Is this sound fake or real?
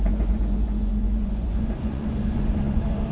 fake